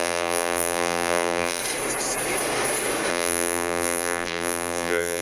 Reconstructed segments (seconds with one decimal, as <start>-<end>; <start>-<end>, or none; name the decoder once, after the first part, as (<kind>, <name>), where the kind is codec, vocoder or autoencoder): 0.0-1.6 (vocoder, BigVGAN v2); 3.1-5.2